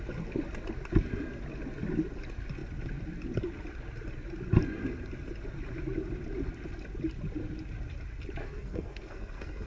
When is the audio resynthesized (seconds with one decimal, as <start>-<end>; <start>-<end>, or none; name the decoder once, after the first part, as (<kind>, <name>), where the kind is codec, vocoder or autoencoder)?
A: 8.4-9.7 (codec, SNAC)